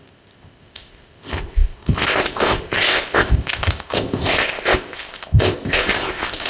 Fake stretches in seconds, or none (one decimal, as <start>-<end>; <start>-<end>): 0.0-6.5